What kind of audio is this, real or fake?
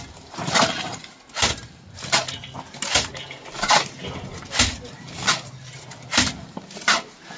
real